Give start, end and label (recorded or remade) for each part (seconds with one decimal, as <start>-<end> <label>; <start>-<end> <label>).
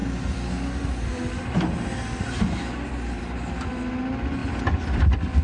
0.0-5.4 recorded